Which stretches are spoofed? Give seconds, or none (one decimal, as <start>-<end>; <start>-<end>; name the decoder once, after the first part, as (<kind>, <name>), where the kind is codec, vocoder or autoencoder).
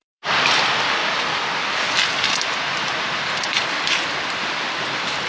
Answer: 0.0-1.0 (vocoder, BigVGAN v2); 4.0-5.3